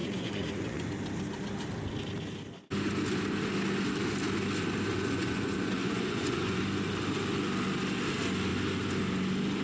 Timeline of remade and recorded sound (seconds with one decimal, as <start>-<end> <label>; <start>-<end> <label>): 0.0-0.9 remade; 0.9-4.9 recorded; 4.9-6.6 remade; 6.6-9.6 recorded

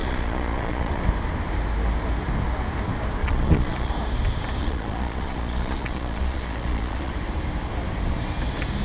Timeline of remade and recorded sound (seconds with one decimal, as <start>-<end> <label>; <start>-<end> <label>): 0.0-1.0 remade; 1.0-3.2 recorded; 3.2-3.9 remade; 3.9-4.6 recorded; 4.6-7.1 remade; 7.1-8.8 recorded

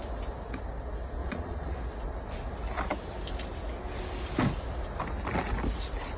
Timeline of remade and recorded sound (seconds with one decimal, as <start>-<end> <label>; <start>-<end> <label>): 0.0-1.2 recorded; 1.2-1.8 remade; 1.8-6.2 recorded